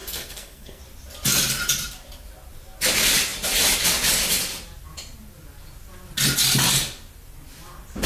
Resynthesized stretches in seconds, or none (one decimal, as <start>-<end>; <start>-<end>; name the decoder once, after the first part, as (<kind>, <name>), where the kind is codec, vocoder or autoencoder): 0.0-0.8 (codec, SNAC)